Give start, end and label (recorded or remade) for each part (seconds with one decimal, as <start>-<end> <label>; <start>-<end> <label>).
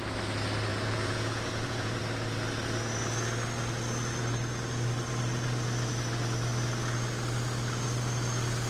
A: 0.0-0.7 recorded; 0.7-2.0 remade; 2.0-8.7 recorded